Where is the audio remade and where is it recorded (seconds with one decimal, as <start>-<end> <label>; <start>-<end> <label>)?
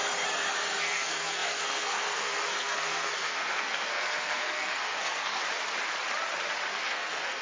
0.0-0.6 recorded; 0.6-5.4 remade; 5.4-6.7 recorded; 6.7-7.4 remade